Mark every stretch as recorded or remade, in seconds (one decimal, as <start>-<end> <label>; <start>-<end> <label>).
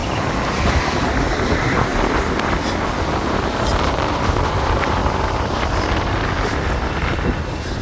0.0-7.8 recorded